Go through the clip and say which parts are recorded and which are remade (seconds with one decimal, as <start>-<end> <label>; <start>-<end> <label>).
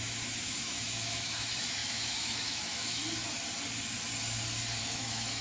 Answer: 0.0-3.0 remade; 3.0-4.8 recorded; 4.8-5.4 remade